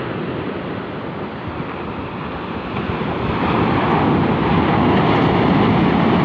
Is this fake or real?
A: real